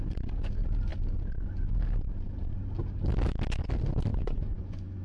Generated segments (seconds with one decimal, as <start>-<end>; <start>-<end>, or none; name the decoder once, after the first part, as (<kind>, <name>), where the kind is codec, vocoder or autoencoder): 4.1-5.0 (vocoder, Vocos)